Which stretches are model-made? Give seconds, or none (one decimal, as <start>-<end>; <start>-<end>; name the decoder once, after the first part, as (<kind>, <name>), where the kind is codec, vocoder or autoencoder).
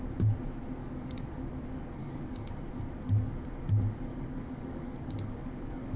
0.8-1.5 (codec, DAC); 2.0-2.6; 4.1-6.0